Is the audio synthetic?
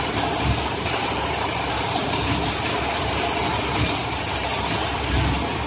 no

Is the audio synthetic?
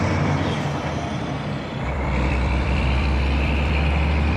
yes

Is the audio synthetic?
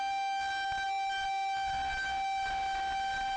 no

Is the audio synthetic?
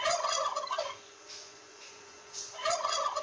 yes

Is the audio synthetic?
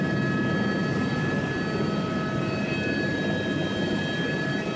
no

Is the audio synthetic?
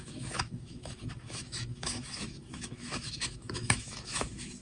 yes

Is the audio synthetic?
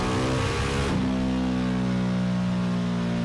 no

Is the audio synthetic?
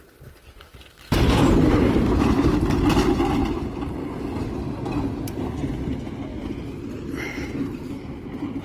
no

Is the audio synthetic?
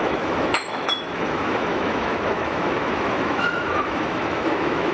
yes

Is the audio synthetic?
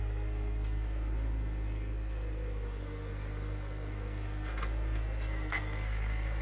yes